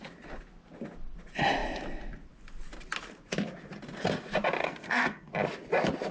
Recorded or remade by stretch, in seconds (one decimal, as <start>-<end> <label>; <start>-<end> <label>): 0.0-4.6 recorded; 4.6-5.3 remade; 5.3-6.1 recorded